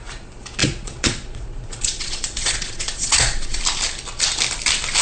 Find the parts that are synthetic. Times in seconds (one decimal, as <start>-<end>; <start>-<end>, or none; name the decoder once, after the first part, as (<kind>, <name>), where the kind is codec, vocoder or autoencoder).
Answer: 0.6-3.6 (vocoder, Vocos)